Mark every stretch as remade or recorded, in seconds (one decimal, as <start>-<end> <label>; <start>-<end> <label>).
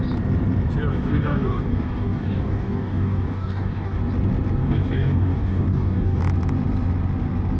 0.0-0.9 recorded; 0.9-4.0 remade; 4.0-4.6 recorded; 4.6-6.2 remade; 6.2-7.6 recorded